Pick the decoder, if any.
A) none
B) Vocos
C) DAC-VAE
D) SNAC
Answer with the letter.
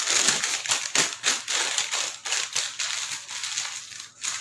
A